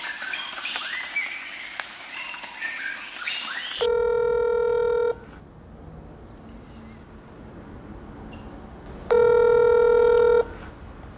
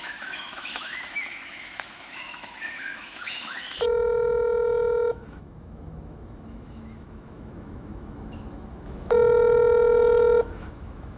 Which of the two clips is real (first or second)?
first